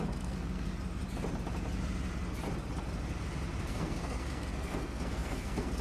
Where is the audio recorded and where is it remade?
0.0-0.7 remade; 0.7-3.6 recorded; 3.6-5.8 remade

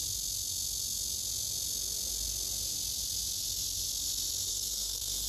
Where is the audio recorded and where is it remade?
0.0-4.5 recorded; 4.5-5.3 remade

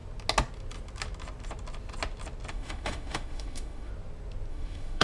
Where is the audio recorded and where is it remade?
0.0-2.5 recorded; 2.5-3.9 remade; 3.9-4.5 recorded; 4.5-5.0 remade

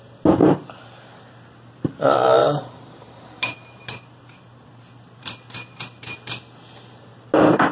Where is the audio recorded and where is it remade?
0.0-2.4 recorded; 2.4-5.2 remade; 5.2-7.7 recorded